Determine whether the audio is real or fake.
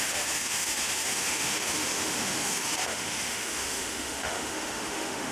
fake